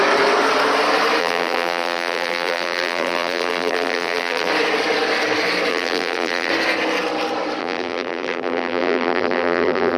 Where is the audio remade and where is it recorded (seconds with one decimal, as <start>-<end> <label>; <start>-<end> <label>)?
0.0-1.2 recorded; 1.2-4.5 remade; 4.5-5.7 recorded; 5.7-6.5 remade; 6.5-7.6 recorded; 7.6-10.0 remade